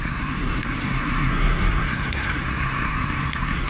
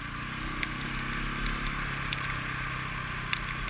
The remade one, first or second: first